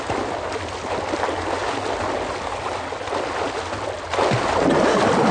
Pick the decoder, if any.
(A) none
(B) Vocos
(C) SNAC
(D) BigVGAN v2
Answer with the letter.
A